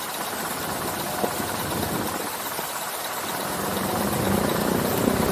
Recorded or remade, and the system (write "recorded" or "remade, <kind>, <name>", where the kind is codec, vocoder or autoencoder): remade, vocoder, BigVGAN v2